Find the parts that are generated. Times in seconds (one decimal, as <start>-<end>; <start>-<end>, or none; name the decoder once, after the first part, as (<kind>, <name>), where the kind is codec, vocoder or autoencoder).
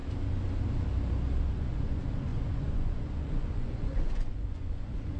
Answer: 1.4-5.2 (vocoder, Vocos)